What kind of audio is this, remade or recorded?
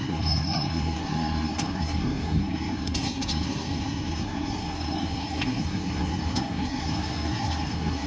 remade